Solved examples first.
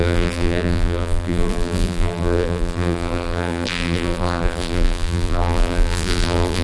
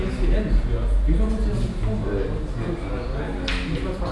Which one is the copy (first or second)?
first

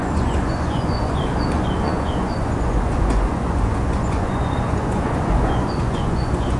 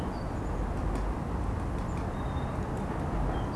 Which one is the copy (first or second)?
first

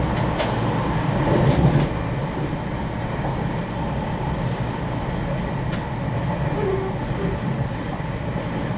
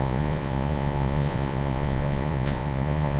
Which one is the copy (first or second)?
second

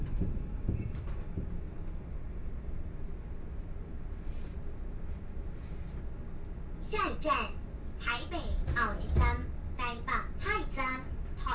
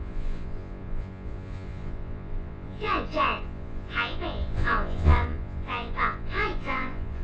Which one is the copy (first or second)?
second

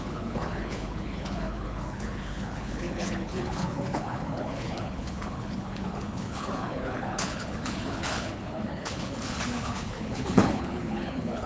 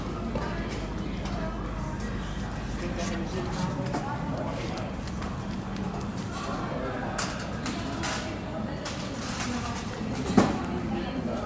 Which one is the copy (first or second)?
first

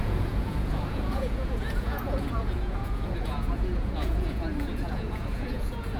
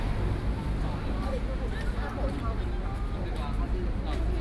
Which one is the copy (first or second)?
first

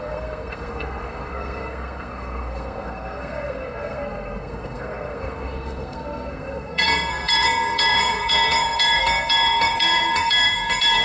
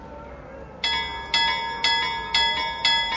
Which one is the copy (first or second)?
first